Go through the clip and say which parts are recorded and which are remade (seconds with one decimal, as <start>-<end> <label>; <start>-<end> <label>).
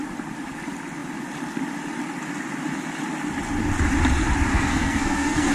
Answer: 0.0-4.5 recorded; 4.5-5.5 remade